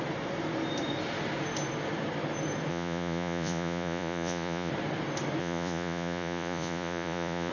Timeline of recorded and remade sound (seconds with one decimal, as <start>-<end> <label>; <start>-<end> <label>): 0.0-2.7 recorded; 2.7-4.7 remade; 4.7-5.4 recorded; 5.4-7.5 remade

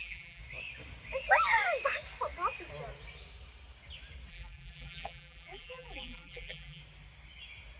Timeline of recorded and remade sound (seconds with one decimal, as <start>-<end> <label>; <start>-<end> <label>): 0.0-0.4 remade; 0.4-4.3 recorded; 4.3-6.8 remade; 6.8-7.8 recorded